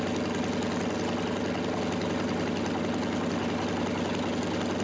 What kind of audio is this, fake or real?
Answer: real